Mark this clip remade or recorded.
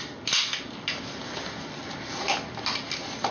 recorded